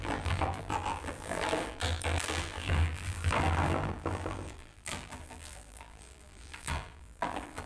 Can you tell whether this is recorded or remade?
remade